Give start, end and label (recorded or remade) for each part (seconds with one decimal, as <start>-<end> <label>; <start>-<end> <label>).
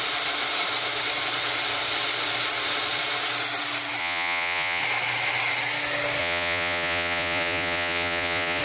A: 0.0-4.0 recorded; 4.0-4.8 remade; 4.8-6.2 recorded; 6.2-8.6 remade